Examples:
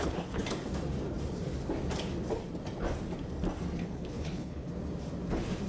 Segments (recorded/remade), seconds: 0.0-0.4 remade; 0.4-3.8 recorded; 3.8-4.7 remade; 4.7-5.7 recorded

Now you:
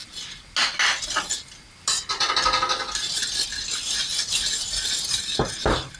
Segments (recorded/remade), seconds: 0.0-6.0 recorded

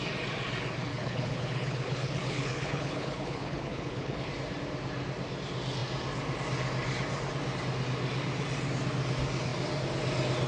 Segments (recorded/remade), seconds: 0.0-0.9 recorded; 0.9-4.3 remade; 4.3-10.5 recorded

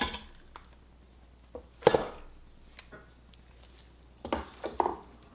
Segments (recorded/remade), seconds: 0.0-5.3 recorded